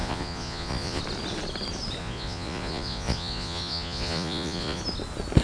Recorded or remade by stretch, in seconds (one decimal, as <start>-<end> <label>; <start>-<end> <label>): 0.0-1.0 remade; 1.0-2.0 recorded; 2.0-4.8 remade; 4.8-5.4 recorded